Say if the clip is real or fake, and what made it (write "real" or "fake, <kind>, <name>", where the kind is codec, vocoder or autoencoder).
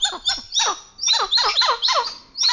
real